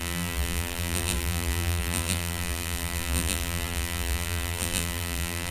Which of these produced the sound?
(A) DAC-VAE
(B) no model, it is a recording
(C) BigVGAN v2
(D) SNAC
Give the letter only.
C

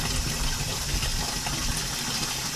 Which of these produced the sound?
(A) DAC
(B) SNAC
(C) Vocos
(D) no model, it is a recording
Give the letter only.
D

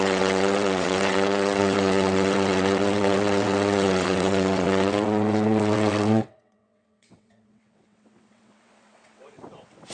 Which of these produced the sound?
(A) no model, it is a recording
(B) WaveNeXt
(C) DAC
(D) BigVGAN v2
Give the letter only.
B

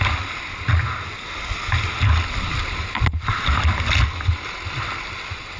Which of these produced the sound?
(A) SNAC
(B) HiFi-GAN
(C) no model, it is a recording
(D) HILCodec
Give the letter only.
C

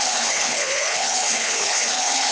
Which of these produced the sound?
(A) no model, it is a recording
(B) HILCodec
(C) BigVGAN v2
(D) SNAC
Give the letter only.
B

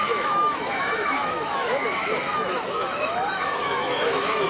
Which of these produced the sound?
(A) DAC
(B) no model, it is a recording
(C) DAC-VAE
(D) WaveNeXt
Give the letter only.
C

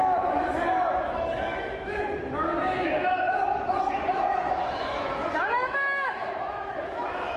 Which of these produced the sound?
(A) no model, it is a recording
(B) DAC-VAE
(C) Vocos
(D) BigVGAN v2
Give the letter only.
B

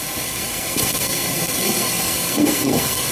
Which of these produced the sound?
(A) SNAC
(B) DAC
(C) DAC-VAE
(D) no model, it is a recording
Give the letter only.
A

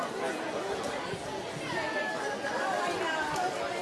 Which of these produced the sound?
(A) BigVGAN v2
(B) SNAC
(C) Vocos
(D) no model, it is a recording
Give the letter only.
D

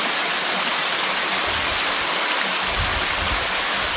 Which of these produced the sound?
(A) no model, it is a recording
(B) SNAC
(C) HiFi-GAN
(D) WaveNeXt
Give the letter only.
A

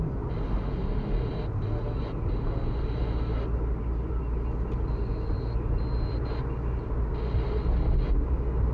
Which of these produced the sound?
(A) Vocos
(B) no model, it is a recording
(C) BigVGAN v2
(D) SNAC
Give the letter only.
B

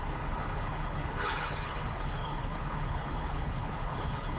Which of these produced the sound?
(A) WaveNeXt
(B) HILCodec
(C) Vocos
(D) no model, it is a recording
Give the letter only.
B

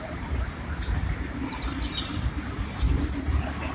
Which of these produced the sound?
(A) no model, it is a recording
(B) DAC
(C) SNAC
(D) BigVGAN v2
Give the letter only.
D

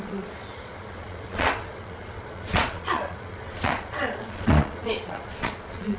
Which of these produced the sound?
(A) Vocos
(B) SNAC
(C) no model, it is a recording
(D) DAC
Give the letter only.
A